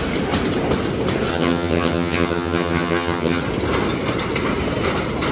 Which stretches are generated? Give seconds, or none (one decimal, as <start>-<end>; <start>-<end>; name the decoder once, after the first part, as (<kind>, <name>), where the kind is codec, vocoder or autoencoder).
1.3-3.4 (vocoder, HiFi-GAN)